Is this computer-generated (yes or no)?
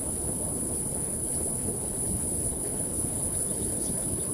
yes